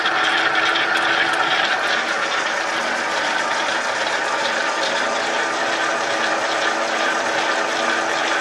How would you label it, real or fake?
fake